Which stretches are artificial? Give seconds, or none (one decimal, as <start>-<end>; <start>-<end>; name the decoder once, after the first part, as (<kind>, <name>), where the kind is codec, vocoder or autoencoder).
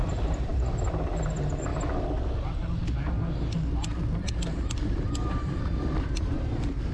0.0-1.7 (vocoder, BigVGAN v2); 2.4-2.8; 4.5-6.9